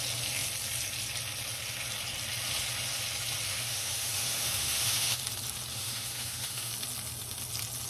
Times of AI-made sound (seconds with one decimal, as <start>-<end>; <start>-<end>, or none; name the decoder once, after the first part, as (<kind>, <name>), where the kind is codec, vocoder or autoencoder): 3.5-5.2 (autoencoder, DAC-VAE); 5.7-6.7